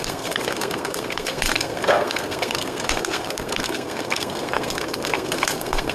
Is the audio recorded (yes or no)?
no